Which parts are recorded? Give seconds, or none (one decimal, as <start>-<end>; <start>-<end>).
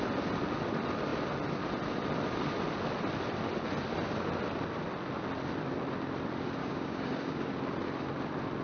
0.0-6.6; 7.5-8.6